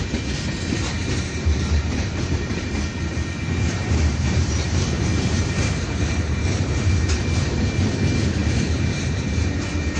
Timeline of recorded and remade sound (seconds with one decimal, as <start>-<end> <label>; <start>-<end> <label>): 0.0-1.0 recorded; 1.0-2.7 remade; 2.7-3.8 recorded; 3.8-7.9 remade; 7.9-8.4 recorded; 8.4-9.4 remade; 9.4-10.0 recorded